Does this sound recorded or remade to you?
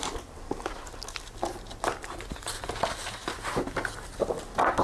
recorded